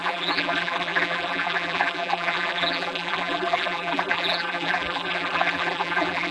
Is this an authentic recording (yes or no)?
no